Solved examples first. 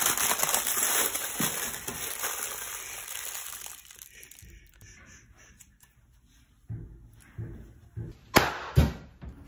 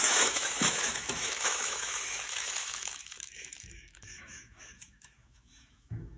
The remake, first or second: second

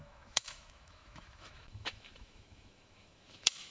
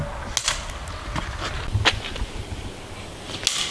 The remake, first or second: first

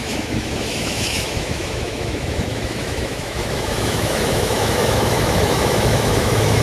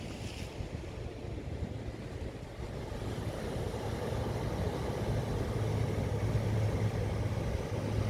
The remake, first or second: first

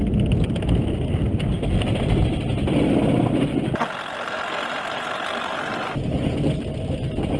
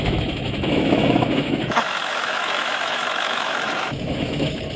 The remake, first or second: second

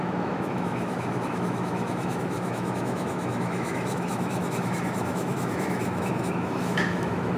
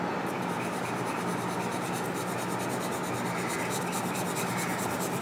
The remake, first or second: first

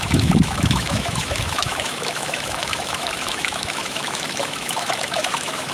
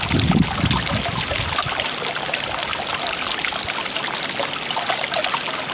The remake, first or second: first